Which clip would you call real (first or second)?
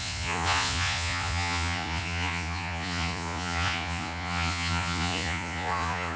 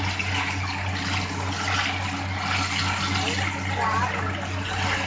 second